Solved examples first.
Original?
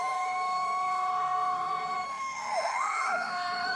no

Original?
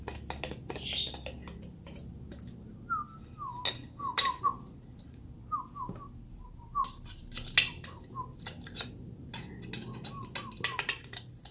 yes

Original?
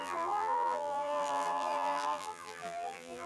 no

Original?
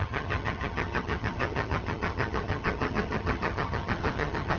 no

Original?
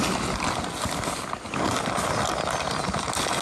yes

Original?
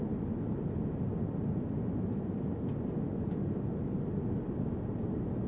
yes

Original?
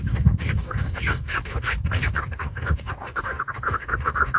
no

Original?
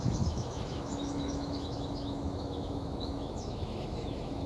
no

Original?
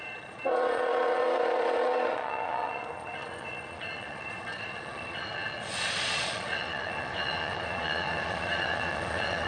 no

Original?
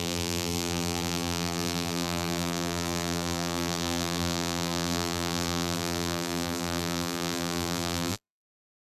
no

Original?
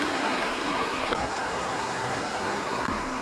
no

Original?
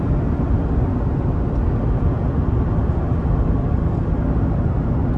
yes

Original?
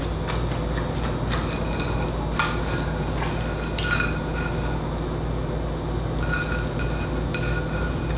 yes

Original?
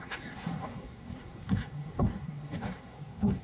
no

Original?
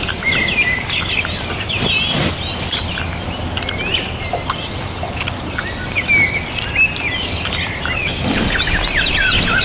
yes